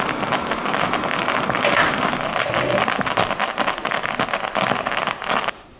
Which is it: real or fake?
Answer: real